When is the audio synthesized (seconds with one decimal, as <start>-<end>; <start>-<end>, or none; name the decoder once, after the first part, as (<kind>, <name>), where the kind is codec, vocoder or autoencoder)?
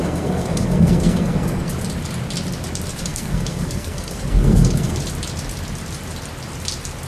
0.0-1.7 (codec, SNAC); 2.9-5.0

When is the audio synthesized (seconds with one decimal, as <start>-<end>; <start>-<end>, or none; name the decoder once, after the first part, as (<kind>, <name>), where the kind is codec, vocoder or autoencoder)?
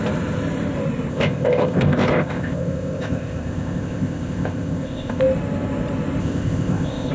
1.1-5.2 (codec, ZipCodec); 6.2-7.1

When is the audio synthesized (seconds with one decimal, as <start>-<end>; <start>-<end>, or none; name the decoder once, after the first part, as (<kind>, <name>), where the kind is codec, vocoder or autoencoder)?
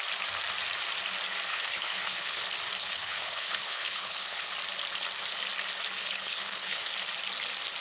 1.5-2.4 (codec, HILCodec); 2.8-4.5; 6.0-6.9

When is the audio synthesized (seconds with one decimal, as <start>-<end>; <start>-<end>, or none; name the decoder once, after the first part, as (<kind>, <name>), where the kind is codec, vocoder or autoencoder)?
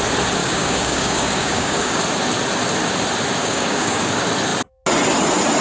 0.4-2.0 (codec, DAC); 3.4-4.1